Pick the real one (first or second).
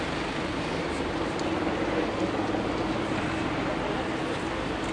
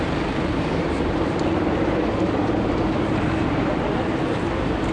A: first